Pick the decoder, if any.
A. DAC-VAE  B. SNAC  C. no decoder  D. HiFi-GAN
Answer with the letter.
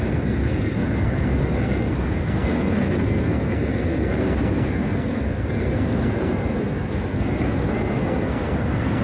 B